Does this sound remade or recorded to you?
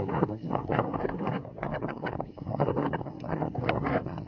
remade